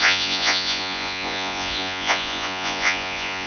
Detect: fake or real fake